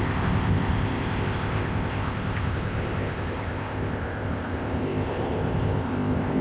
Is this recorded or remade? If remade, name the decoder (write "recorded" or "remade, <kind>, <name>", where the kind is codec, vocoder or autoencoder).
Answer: remade, codec, ZipCodec